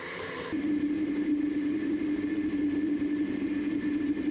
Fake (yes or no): yes